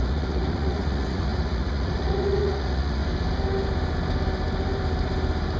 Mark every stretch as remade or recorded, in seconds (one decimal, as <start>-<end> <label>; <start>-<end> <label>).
0.0-3.0 remade; 3.0-5.6 recorded